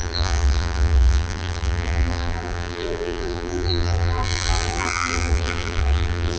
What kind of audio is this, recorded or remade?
remade